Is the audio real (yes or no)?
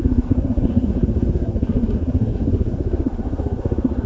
no